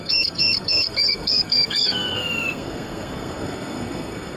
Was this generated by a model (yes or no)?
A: yes